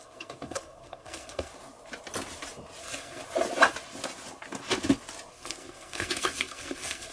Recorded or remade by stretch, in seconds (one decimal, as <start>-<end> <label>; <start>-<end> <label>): 0.0-1.5 remade; 1.5-2.8 recorded; 2.8-3.2 remade; 3.2-5.3 recorded; 5.3-7.1 remade